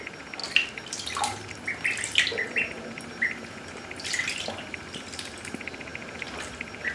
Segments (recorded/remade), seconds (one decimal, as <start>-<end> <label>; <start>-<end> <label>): 0.0-6.9 recorded